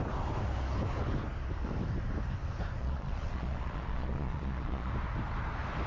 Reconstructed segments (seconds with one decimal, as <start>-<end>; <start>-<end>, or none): 2.8-4.9